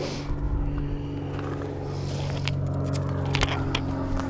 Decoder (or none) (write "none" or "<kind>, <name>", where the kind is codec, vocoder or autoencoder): none